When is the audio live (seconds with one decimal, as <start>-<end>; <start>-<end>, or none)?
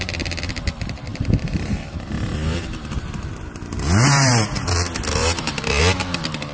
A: 0.0-1.1; 4.7-5.2; 5.8-6.5